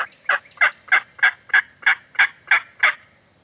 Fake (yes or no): no